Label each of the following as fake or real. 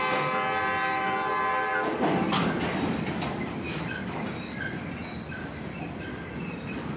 real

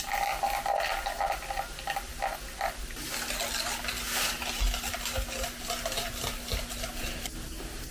real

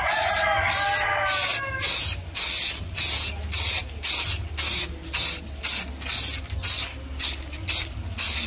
real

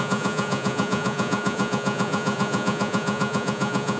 fake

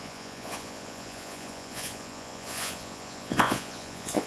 fake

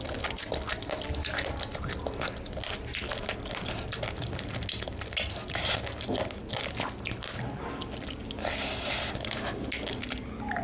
real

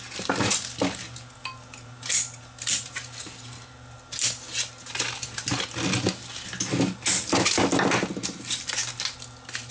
real